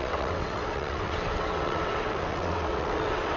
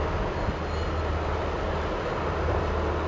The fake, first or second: first